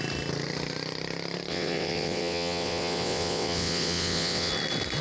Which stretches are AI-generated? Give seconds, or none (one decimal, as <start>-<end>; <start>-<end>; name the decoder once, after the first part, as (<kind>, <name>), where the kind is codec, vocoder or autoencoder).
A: 1.5-4.5 (vocoder, WaveNeXt)